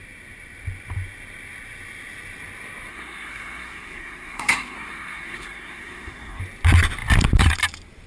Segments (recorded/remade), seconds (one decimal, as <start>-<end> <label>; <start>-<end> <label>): 0.0-2.9 recorded; 2.9-6.4 remade; 6.4-8.1 recorded